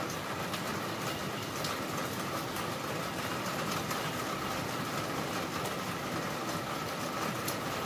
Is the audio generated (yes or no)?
no